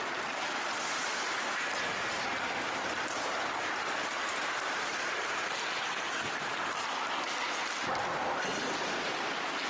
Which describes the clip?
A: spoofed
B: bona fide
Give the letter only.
B